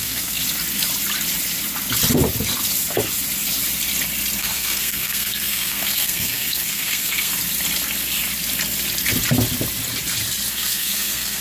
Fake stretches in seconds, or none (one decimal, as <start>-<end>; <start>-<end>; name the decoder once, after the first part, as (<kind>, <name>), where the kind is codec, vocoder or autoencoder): 0.0-0.4 (codec, SNAC); 4.4-7.3; 10.5-11.4